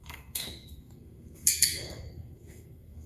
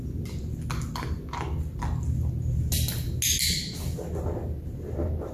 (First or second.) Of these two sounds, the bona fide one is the second